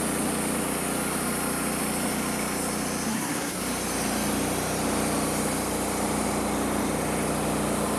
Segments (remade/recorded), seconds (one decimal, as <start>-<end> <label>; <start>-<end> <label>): 0.0-3.1 recorded; 3.1-3.6 remade; 3.6-8.0 recorded